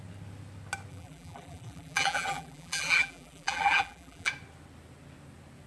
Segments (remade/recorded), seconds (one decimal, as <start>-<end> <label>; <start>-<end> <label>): 0.0-0.9 recorded; 0.9-4.3 remade; 4.3-5.7 recorded